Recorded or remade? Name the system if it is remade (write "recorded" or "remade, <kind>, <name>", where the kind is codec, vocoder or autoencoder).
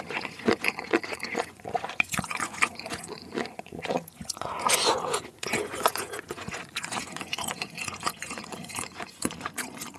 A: remade, vocoder, Vocos